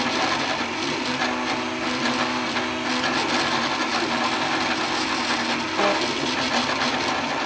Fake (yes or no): no